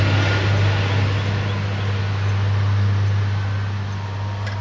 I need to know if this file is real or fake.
real